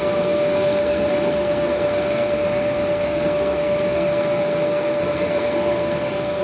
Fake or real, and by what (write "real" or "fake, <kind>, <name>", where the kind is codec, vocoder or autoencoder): fake, codec, SNAC